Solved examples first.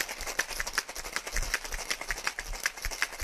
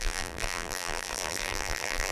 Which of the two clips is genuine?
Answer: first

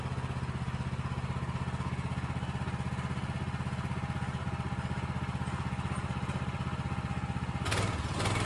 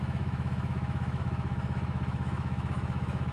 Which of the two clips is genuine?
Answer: first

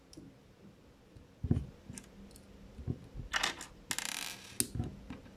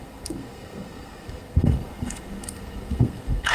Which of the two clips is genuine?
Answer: first